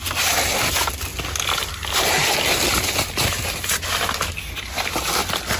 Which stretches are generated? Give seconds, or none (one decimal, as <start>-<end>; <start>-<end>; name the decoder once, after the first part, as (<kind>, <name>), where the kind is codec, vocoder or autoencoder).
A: none